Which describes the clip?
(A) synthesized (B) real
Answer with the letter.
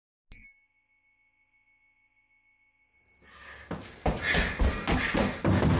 B